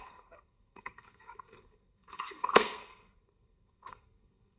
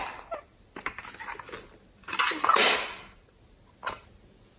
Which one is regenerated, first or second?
first